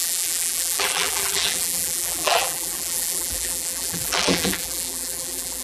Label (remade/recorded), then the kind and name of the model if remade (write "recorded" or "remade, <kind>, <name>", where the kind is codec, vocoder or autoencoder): remade, vocoder, BigVGAN v2